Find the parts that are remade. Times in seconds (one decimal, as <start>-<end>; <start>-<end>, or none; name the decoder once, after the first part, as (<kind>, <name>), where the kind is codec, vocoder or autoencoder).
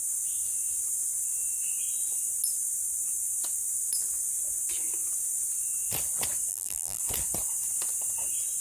6.5-7.0 (vocoder, BigVGAN v2)